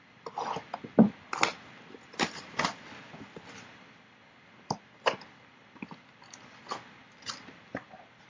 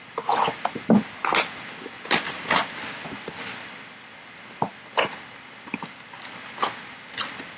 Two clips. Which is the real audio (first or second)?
second